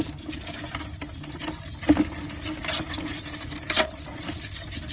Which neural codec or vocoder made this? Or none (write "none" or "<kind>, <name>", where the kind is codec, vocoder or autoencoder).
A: none